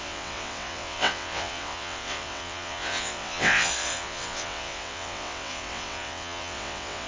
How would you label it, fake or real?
fake